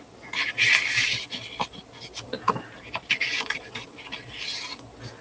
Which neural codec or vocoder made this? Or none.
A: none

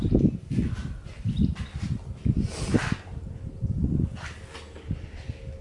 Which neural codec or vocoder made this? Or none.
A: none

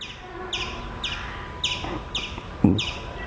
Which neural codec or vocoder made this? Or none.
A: none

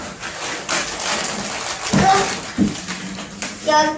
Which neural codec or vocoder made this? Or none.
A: none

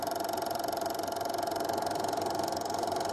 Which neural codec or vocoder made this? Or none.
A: none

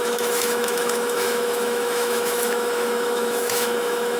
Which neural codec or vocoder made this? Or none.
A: autoencoder, DAC-VAE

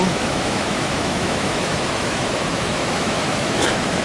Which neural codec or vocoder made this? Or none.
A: autoencoder, DAC-VAE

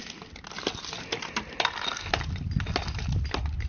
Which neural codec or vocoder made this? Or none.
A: none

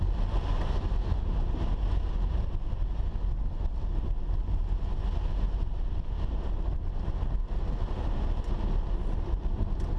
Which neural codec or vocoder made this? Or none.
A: none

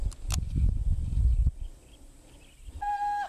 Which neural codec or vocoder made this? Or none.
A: none